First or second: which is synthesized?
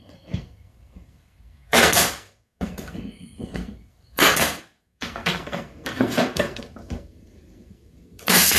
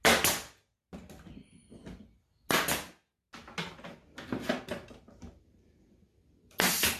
first